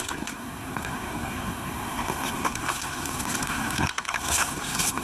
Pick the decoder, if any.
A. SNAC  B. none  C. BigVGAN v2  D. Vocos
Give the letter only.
A